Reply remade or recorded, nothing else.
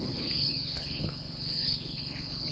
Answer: remade